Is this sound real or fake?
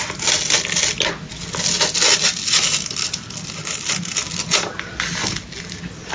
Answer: real